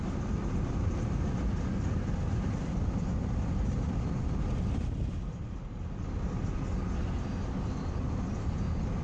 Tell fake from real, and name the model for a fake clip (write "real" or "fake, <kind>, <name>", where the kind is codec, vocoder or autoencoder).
real